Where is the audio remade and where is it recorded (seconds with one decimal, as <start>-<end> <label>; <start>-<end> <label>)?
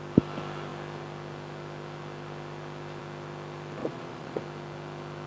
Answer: 0.0-3.8 recorded; 3.8-4.4 remade; 4.4-5.3 recorded